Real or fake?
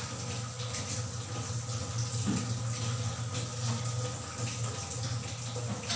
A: real